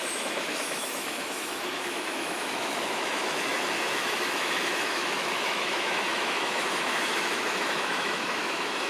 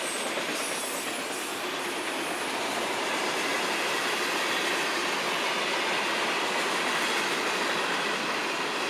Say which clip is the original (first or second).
second